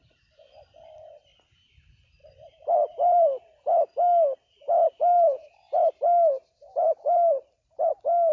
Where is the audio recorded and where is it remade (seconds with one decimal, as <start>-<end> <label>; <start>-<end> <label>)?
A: 0.0-2.2 recorded; 2.2-3.4 remade; 3.4-4.8 recorded; 4.8-7.9 remade; 7.9-8.3 recorded

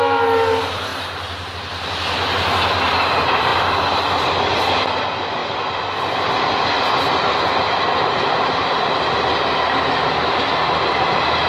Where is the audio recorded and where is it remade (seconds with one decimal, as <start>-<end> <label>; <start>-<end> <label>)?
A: 0.0-0.9 recorded; 0.9-1.5 remade; 1.5-11.5 recorded

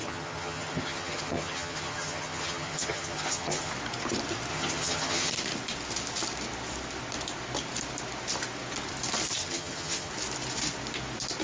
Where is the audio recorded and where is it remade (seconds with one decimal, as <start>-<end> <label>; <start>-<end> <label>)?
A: 0.0-3.7 remade; 3.7-4.5 recorded; 4.5-5.3 remade; 5.3-9.4 recorded; 9.4-10.1 remade; 10.1-11.4 recorded

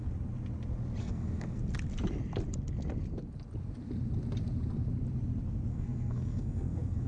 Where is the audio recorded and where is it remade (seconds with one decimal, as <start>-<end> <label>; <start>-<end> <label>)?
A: 0.0-1.0 recorded; 1.0-1.6 remade; 1.6-5.7 recorded; 5.7-7.1 remade

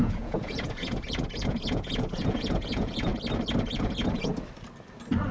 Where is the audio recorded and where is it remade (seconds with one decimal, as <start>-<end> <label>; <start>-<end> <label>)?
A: 0.0-3.1 remade; 3.1-3.7 recorded; 3.7-4.3 remade; 4.3-5.3 recorded

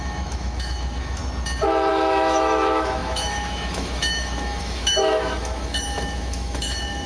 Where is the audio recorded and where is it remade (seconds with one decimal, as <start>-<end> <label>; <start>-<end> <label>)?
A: 0.0-1.2 remade; 1.2-1.9 recorded; 1.9-7.1 remade